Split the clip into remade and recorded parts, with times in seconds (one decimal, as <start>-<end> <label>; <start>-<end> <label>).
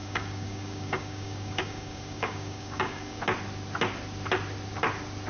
0.0-3.2 remade; 3.2-5.3 recorded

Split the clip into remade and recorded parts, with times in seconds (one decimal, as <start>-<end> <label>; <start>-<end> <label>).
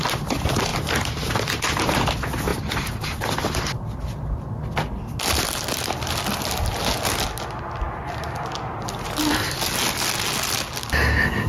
0.0-11.5 recorded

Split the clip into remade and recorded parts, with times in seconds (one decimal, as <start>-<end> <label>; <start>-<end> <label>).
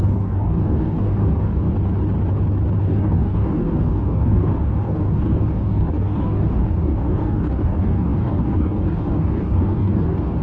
0.0-1.7 remade; 1.7-2.8 recorded; 2.8-10.4 remade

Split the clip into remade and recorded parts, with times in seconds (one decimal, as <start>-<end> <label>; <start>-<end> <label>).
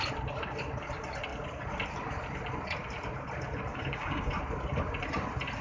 0.0-3.7 recorded; 3.7-4.3 remade; 4.3-5.6 recorded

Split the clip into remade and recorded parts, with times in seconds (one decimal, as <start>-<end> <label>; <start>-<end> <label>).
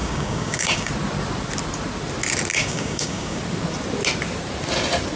0.0-0.9 remade; 0.9-2.5 recorded; 2.5-3.4 remade; 3.4-5.2 recorded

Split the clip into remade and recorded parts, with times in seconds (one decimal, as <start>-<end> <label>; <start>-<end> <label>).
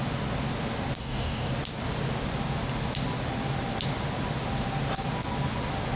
0.0-1.0 recorded; 1.0-1.5 remade; 1.5-6.0 recorded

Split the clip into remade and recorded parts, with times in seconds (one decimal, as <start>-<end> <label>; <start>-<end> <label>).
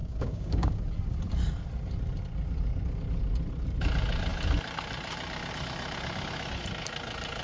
0.0-0.8 remade; 0.8-7.4 recorded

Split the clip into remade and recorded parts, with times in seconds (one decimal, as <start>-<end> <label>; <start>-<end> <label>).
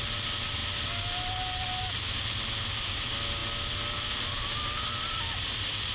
0.0-5.9 recorded